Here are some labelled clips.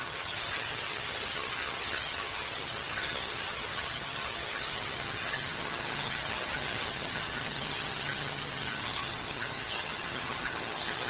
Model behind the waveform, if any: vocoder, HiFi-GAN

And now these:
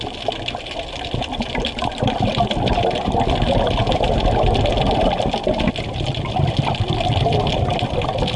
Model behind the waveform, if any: none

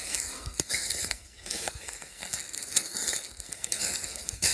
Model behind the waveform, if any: codec, SNAC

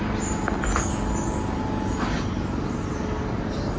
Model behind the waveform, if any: none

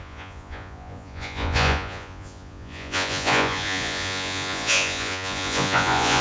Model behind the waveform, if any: vocoder, Vocos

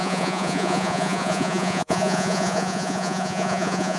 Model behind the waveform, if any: vocoder, Vocos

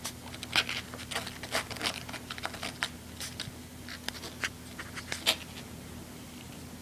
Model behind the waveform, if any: none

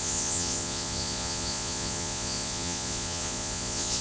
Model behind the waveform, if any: vocoder, Vocos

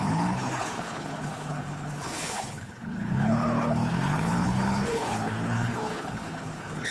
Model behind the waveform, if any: codec, HILCodec